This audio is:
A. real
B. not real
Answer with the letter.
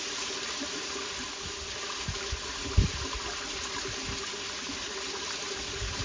A